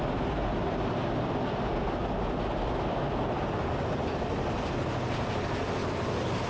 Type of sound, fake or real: real